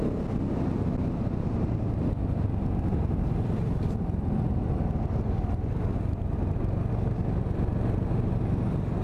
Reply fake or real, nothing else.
real